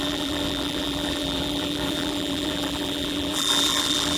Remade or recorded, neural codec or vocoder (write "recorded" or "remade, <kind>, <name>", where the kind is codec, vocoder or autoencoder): remade, vocoder, BigVGAN v2